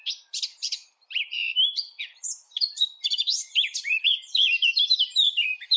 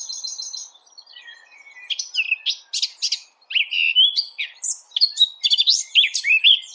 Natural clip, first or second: second